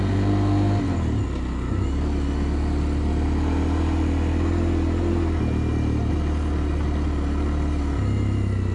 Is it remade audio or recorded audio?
recorded